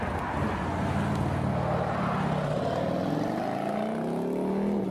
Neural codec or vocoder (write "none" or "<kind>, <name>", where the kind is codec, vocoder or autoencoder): none